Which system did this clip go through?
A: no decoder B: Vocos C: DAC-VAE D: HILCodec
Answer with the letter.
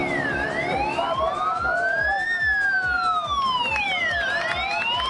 A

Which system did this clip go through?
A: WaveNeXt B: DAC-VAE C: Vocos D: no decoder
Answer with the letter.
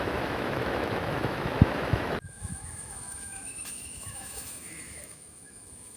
B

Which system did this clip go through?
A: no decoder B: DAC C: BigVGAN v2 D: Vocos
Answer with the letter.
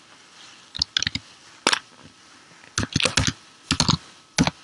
A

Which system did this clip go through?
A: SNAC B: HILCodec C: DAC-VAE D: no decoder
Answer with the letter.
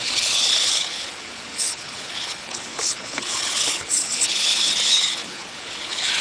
B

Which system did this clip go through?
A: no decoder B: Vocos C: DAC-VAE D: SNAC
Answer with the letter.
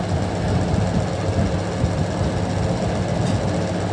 A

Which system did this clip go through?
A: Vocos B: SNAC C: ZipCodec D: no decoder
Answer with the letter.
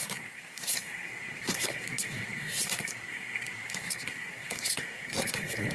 B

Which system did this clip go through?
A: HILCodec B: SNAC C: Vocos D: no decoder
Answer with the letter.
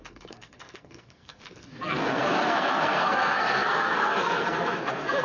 B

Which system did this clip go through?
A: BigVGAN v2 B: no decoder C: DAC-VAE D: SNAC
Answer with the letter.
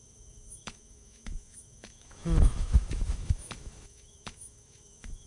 C